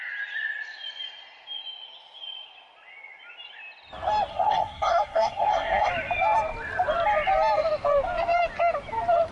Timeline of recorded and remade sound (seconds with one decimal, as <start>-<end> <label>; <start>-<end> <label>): 0.0-4.3 recorded; 4.3-5.9 remade; 5.9-9.3 recorded